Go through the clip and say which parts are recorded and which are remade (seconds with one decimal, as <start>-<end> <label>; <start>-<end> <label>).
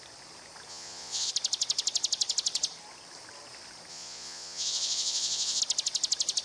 0.0-0.7 recorded; 0.7-1.3 remade; 1.3-3.9 recorded; 3.9-5.6 remade; 5.6-6.4 recorded